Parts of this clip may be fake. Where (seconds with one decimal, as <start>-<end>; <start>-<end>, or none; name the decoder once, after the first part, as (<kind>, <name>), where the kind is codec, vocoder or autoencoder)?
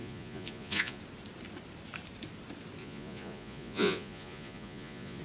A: 0.0-1.0 (vocoder, Vocos); 2.8-5.2